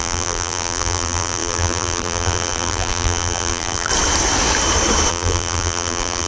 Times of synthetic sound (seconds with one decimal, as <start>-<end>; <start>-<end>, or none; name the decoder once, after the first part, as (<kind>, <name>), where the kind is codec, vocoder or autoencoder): 0.0-3.9 (vocoder, BigVGAN v2); 5.1-6.3